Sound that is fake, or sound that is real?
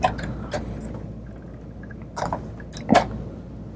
real